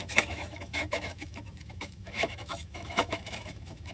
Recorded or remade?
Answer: remade